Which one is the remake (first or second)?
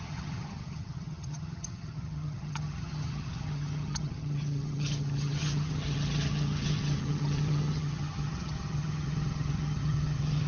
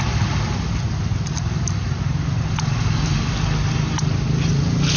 first